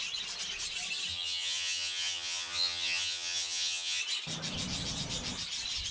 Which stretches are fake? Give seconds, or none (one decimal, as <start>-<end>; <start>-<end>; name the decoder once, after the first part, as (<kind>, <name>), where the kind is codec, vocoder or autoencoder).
1.1-4.0 (vocoder, HiFi-GAN)